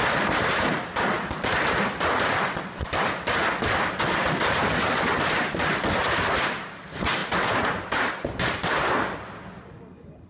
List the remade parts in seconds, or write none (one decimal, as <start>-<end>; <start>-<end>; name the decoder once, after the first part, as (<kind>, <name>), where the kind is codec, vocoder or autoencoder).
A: 7.2-8.9 (vocoder, BigVGAN v2)